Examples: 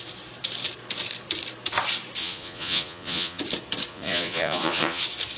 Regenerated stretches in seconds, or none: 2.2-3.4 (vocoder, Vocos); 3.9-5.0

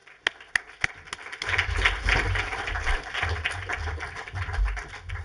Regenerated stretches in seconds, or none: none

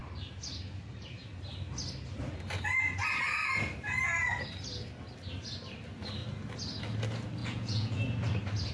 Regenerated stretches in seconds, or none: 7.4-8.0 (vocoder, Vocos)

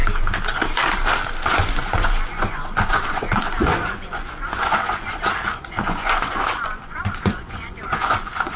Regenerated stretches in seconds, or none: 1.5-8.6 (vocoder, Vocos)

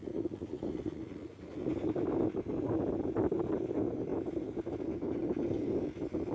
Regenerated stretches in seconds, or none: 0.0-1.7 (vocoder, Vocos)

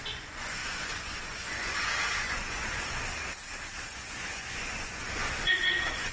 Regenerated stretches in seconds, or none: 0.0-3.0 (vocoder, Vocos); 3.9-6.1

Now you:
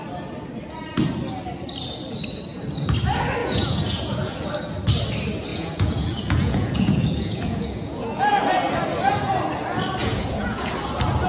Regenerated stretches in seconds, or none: 3.4-4.5 (vocoder, Vocos); 5.5-8.2; 10.0-10.7

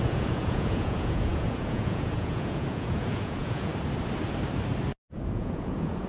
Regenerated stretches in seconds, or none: 0.0-3.7 (vocoder, Vocos); 5.1-6.1